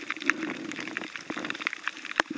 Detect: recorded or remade remade